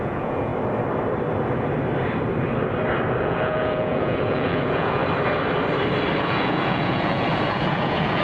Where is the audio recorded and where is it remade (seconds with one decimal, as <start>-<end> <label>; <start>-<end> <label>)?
0.0-0.5 remade; 0.5-3.2 recorded; 3.2-5.0 remade; 5.0-6.2 recorded; 6.2-8.2 remade